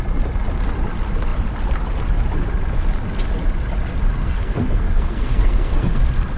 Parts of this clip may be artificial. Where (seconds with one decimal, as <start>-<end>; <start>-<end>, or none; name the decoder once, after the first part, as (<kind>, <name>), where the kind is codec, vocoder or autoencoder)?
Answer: 4.2-6.0 (codec, SNAC)